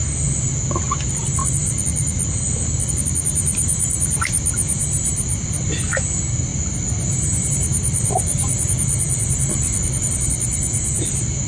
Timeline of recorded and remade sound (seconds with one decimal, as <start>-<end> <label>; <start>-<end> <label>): 0.0-11.5 recorded